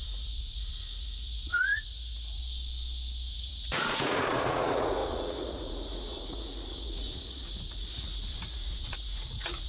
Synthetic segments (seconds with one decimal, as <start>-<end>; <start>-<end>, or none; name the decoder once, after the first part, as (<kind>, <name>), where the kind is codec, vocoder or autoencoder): 0.0-2.4 (vocoder, Vocos); 3.3-9.7